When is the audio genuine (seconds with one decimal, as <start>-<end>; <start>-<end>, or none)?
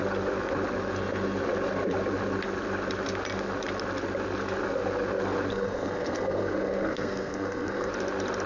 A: 0.0-5.5; 7.9-8.5